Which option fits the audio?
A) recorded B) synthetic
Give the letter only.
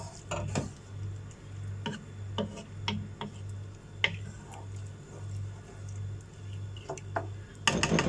A